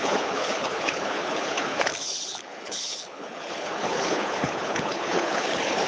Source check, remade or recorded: remade